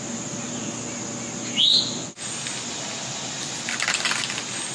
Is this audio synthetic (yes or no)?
no